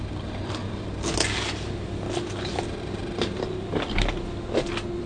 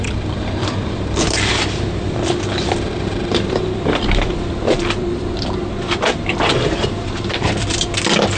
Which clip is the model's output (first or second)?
second